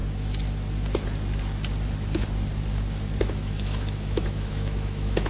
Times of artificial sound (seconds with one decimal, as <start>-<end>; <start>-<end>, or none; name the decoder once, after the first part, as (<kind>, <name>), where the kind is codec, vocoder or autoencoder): 3.2-5.3 (autoencoder, DAC-VAE)